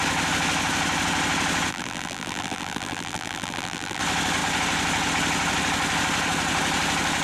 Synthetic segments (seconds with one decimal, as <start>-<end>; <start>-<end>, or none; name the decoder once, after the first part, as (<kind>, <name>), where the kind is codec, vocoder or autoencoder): 1.7-4.0 (vocoder, BigVGAN v2)